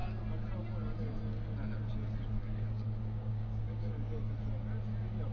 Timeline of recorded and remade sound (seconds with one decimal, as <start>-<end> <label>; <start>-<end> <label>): 0.0-2.4 recorded; 2.4-4.1 remade; 4.1-5.3 recorded